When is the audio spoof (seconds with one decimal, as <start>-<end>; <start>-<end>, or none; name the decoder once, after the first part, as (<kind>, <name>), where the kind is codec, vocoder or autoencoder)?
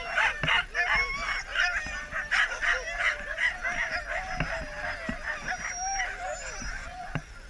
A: 6.7-7.5 (vocoder, Vocos)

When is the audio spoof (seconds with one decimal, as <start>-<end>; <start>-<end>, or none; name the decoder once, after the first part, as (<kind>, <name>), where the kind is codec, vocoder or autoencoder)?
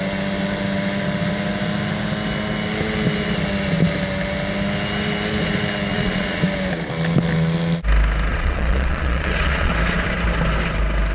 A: 5.9-6.4 (vocoder, Vocos); 8.3-9.7